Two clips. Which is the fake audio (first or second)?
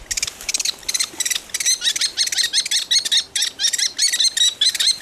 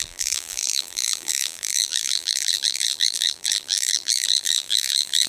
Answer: second